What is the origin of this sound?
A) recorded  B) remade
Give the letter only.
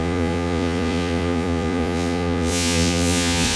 B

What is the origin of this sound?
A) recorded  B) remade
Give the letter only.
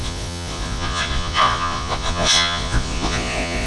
B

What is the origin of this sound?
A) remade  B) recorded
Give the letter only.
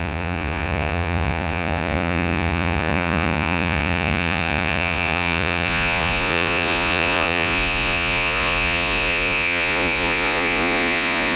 A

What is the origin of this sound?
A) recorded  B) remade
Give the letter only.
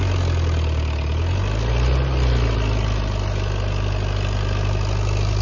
A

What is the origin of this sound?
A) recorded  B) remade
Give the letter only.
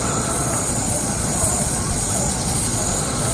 B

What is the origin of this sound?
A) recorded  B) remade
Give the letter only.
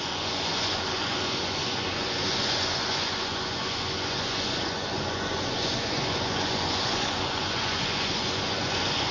B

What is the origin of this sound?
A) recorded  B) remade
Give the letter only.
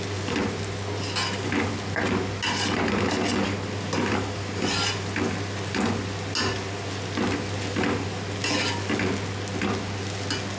A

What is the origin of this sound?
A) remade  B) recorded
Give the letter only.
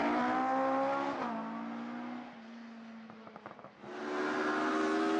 B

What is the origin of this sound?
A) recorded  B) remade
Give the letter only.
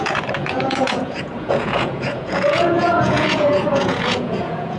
B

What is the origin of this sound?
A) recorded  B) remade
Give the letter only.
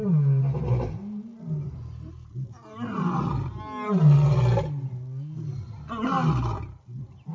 A